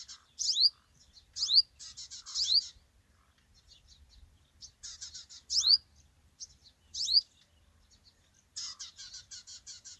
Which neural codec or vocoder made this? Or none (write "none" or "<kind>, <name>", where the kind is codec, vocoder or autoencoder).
none